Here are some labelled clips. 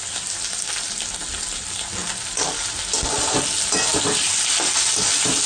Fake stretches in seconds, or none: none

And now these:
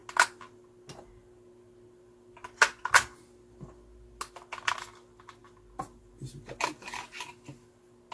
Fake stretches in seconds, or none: none

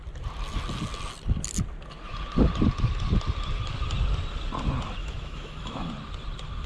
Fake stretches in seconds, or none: 5.0-5.9 (autoencoder, DAC-VAE)

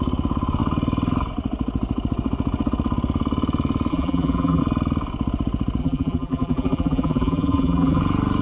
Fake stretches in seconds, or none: 3.9-4.6 (vocoder, BigVGAN v2); 5.8-8.0

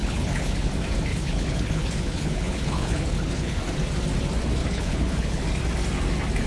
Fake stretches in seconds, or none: 0.0-0.7 (codec, HILCodec); 1.1-3.6; 4.6-5.4

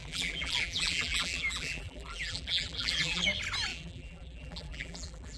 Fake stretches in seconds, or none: 0.0-3.2 (vocoder, BigVGAN v2); 3.7-5.4